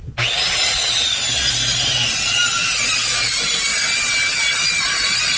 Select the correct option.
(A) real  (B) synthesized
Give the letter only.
A